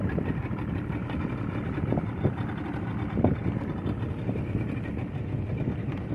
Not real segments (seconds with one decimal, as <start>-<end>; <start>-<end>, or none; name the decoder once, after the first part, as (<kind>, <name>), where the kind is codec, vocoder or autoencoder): 0.0-1.0 (vocoder, BigVGAN v2); 2.0-2.9; 5.5-6.1